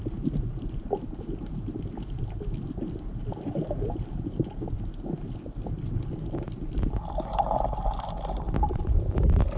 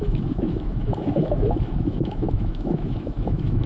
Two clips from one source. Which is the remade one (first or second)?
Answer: second